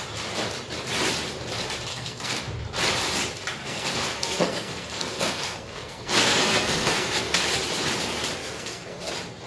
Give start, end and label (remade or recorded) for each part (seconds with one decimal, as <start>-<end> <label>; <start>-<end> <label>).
0.0-1.9 recorded; 1.9-2.4 remade; 2.4-3.6 recorded; 3.6-7.6 remade; 7.6-8.4 recorded; 8.4-9.1 remade; 9.1-9.5 recorded